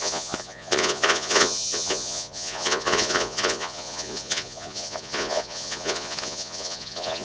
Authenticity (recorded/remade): remade